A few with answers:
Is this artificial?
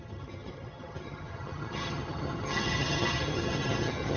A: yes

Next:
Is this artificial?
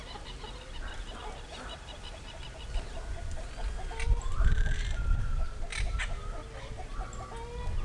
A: no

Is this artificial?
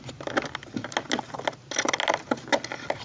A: no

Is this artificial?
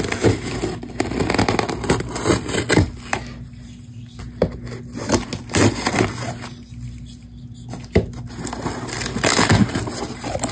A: no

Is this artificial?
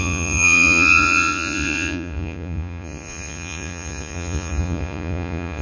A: yes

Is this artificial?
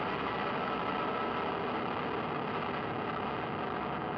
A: no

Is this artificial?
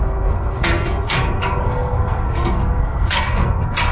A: yes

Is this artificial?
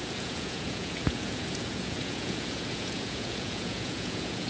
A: yes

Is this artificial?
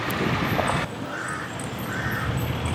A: no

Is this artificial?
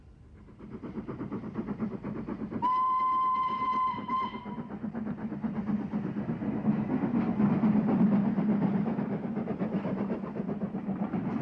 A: no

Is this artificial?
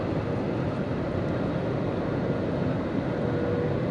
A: no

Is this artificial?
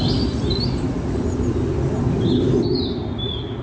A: no